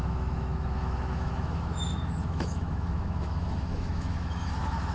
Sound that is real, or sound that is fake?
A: fake